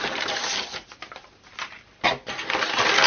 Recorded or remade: recorded